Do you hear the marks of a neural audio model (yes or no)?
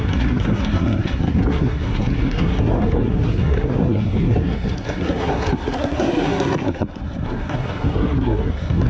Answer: yes